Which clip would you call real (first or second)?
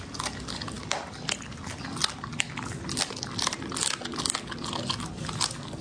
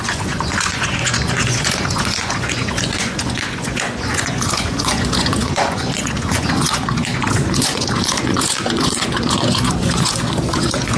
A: first